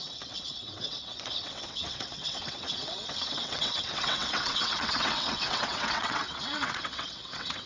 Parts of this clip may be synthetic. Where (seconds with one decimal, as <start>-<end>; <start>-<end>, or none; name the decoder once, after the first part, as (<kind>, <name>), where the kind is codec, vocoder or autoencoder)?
0.0-7.7 (vocoder, WaveNeXt)